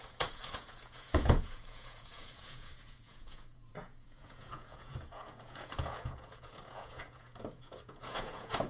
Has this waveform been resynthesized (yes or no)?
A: yes